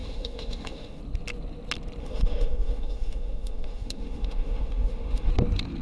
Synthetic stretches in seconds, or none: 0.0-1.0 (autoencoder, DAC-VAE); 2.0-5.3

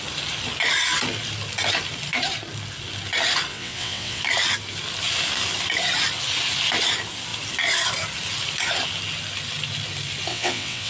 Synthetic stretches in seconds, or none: 3.5-4.2 (vocoder, WaveNeXt); 10.3-10.9